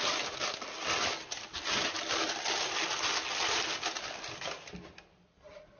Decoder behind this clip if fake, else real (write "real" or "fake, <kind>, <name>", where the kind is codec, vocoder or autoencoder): real